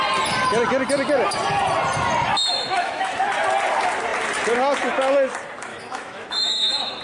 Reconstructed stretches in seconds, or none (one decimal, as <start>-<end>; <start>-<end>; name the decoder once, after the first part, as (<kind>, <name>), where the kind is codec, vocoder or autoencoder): 2.5-3.1 (autoencoder, DAC-VAE); 5.7-7.0